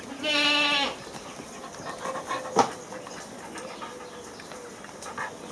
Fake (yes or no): no